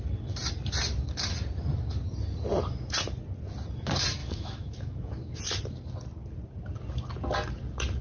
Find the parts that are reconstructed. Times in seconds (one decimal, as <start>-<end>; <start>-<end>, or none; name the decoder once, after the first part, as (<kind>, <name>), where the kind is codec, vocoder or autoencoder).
4.2-5.4 (autoencoder, DAC-VAE)